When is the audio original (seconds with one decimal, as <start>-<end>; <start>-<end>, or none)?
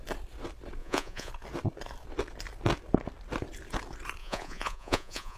0.0-0.8; 1.3-4.2